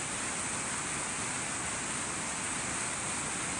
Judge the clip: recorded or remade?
recorded